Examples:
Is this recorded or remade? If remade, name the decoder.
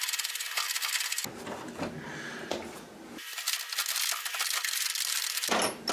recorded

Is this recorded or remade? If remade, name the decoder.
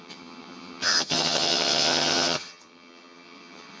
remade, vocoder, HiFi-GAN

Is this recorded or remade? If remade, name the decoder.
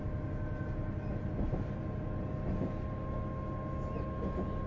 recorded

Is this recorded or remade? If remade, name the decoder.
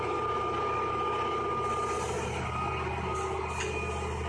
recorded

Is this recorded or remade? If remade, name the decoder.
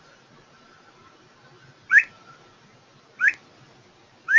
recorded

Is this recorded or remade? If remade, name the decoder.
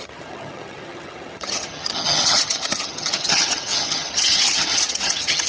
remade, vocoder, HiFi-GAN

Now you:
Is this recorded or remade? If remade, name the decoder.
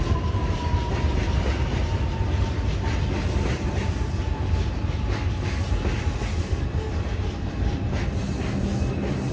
recorded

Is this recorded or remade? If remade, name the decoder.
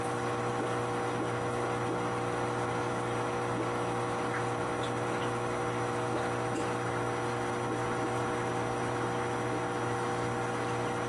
recorded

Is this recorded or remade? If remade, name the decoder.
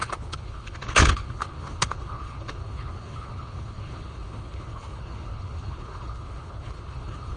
remade, codec, HILCodec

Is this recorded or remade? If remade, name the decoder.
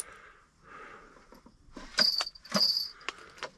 recorded